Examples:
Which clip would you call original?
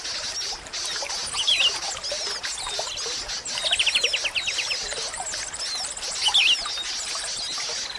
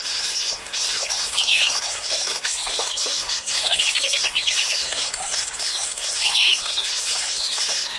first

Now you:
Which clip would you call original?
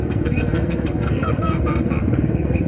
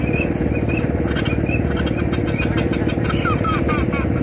second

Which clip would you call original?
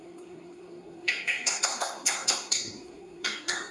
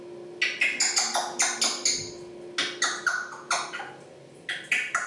second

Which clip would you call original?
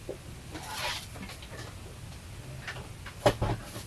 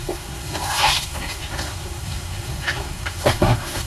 first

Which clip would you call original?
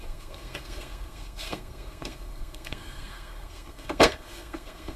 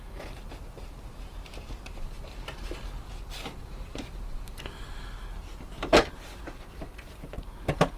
second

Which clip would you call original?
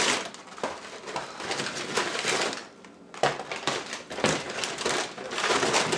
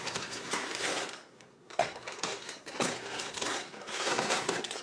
first